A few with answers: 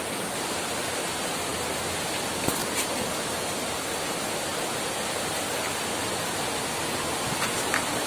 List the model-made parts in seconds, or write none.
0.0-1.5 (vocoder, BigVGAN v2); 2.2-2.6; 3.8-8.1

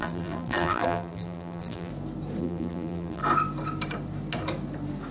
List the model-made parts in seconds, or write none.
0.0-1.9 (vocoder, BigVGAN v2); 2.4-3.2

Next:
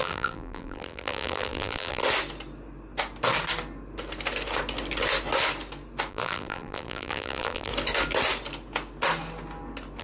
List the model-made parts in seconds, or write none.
0.0-2.0 (vocoder, BigVGAN v2); 6.1-7.7

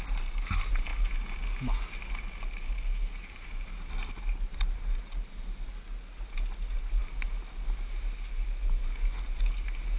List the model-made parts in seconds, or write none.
3.2-5.3 (vocoder, BigVGAN v2)

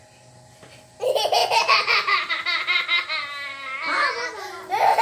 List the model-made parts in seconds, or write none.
1.4-2.3 (vocoder, BigVGAN v2)

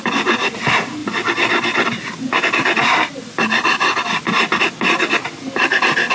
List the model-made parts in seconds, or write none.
none

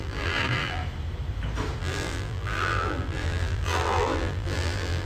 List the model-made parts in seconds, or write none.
0.0-0.8 (vocoder, BigVGAN v2); 1.8-5.1

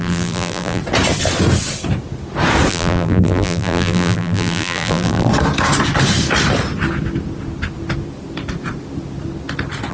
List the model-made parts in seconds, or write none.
0.0-0.8 (vocoder, BigVGAN v2); 2.7-5.3